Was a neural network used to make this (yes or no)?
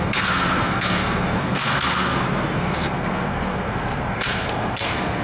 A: yes